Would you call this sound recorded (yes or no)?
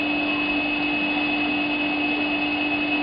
yes